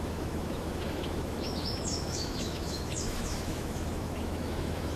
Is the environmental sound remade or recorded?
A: remade